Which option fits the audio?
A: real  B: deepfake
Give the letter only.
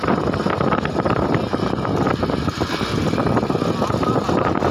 A